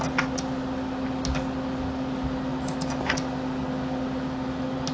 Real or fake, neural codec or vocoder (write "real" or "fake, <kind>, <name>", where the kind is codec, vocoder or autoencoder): real